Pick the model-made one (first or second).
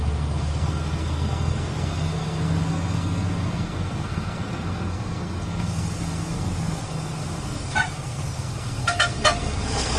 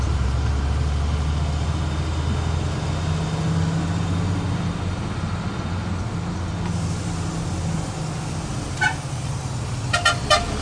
first